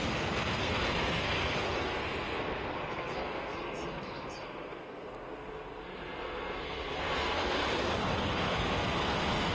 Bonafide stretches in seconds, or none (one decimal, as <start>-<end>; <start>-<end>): 7.4-8.3